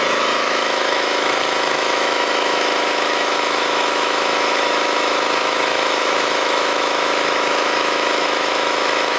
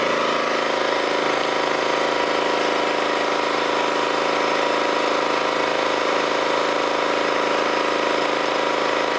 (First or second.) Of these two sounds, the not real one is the first